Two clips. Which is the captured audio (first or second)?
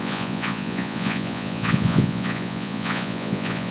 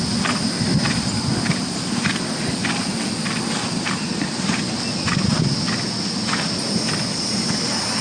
second